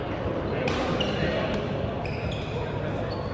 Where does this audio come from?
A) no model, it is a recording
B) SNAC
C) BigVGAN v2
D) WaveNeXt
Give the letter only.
A